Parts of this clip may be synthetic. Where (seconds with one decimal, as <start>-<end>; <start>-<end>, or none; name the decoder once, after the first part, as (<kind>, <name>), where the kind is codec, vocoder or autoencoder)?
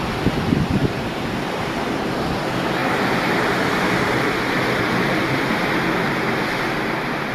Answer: 0.8-1.9 (vocoder, BigVGAN v2); 2.8-4.5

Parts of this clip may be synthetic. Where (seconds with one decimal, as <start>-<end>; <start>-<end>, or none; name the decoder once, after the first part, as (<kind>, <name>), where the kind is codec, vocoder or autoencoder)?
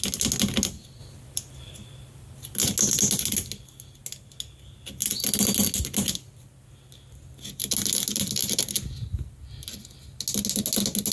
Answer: none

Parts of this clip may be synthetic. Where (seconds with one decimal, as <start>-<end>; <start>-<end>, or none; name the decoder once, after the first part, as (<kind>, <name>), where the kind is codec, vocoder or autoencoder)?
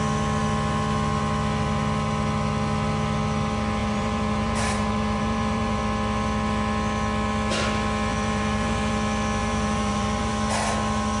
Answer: 3.8-5.8 (vocoder, BigVGAN v2); 8.1-8.9; 9.4-10.3